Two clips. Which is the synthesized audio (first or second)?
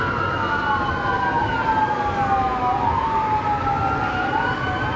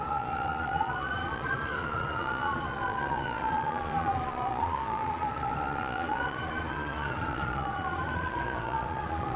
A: second